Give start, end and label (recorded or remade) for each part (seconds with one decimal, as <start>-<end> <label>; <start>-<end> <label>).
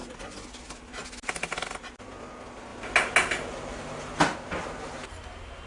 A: 0.0-5.7 recorded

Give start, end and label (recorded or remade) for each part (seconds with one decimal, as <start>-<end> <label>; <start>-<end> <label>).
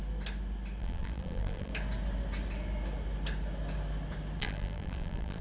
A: 0.0-0.8 recorded; 0.8-1.7 remade; 1.7-4.4 recorded; 4.4-5.4 remade